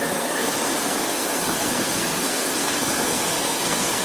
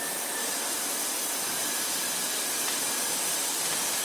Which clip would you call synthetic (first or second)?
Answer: first